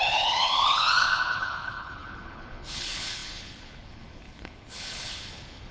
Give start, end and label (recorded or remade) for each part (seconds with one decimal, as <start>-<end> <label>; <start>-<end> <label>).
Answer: 0.0-5.7 remade